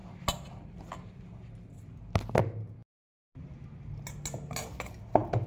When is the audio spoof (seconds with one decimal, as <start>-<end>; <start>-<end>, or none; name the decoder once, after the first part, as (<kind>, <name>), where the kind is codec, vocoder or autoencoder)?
none